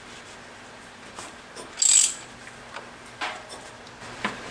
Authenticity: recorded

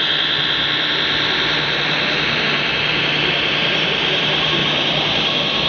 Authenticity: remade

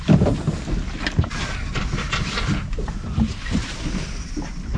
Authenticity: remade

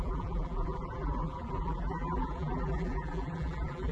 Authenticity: remade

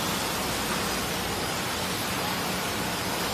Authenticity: remade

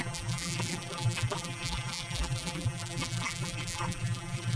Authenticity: remade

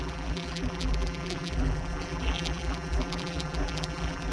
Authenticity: remade